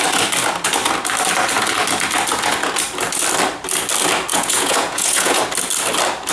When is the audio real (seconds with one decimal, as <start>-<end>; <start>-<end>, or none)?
0.0-4.3; 5.4-6.3